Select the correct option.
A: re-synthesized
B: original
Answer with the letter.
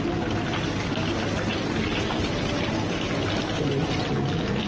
B